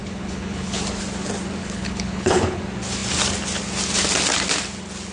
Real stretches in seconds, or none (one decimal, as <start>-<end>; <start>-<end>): 0.8-1.6; 2.6-5.1